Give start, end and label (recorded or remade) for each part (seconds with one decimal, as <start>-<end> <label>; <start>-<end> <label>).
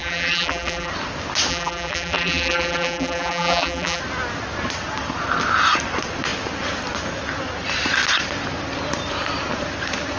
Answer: 0.0-0.9 remade; 0.9-1.5 recorded; 1.5-4.0 remade; 4.0-10.2 recorded